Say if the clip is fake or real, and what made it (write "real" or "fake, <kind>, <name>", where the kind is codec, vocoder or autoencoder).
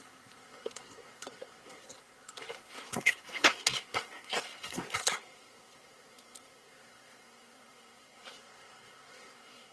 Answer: fake, codec, SNAC